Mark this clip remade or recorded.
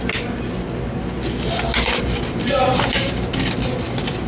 recorded